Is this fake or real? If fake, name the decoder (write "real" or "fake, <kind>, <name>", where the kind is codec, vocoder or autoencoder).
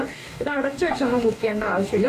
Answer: fake, codec, DAC